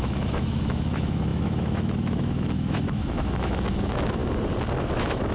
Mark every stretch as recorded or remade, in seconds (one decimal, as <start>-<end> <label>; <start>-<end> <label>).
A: 0.0-4.2 remade; 4.2-4.8 recorded; 4.8-5.3 remade